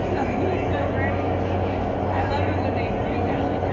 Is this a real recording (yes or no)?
yes